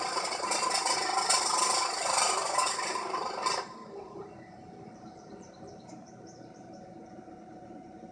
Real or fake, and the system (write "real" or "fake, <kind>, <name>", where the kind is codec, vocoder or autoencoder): fake, vocoder, BigVGAN v2